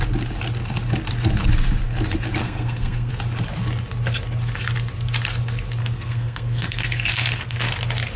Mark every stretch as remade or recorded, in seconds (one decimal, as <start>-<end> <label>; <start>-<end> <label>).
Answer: 0.0-2.4 recorded; 2.4-3.1 remade; 3.1-5.8 recorded; 5.8-7.7 remade; 7.7-8.2 recorded